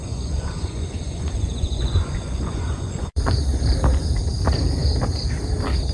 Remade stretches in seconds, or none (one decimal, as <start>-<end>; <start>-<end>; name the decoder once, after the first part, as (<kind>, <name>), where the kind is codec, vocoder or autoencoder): 0.0-3.4 (vocoder, Vocos)